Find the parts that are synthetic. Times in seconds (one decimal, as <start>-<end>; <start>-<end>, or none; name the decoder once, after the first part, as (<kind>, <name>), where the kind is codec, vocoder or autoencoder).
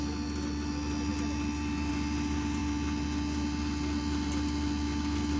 none